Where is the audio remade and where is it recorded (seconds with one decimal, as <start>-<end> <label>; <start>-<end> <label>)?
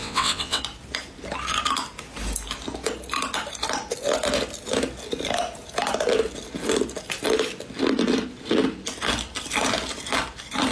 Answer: 0.0-0.6 remade; 0.6-10.7 recorded